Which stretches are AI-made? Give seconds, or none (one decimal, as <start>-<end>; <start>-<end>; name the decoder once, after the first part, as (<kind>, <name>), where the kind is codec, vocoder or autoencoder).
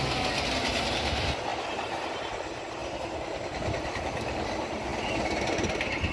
none